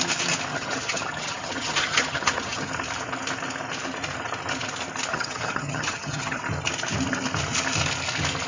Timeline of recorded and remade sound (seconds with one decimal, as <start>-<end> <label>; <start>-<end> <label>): 0.0-0.5 recorded; 0.5-2.7 remade; 2.7-5.1 recorded; 5.1-6.4 remade; 6.4-8.5 recorded